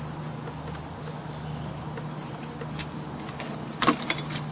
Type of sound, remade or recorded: recorded